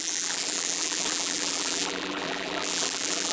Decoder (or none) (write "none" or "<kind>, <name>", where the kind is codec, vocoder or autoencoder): vocoder, BigVGAN v2